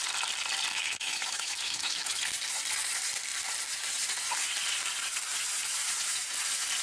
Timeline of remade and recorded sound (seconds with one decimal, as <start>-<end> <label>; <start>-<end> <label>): 0.0-0.7 recorded; 0.7-2.2 remade; 2.2-6.8 recorded